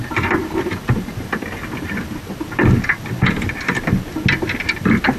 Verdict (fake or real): real